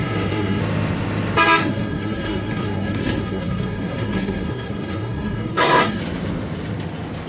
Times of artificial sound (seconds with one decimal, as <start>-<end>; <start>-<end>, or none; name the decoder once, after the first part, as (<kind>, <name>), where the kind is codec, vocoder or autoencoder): 0.0-0.6 (codec, SNAC); 1.6-6.0